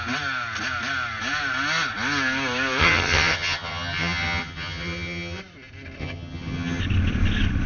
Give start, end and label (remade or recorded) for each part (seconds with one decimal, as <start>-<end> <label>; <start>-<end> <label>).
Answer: 0.0-2.8 recorded; 2.8-5.4 remade; 5.4-6.0 recorded; 6.0-6.8 remade; 6.8-7.7 recorded